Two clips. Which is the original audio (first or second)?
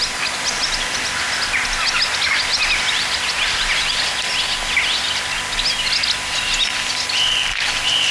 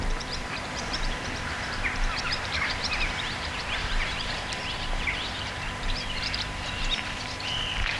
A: first